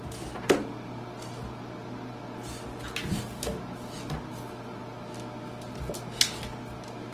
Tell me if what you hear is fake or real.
real